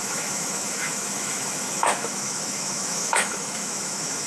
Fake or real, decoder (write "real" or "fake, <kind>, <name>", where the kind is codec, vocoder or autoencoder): fake, autoencoder, DAC-VAE